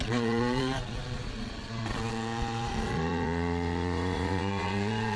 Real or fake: fake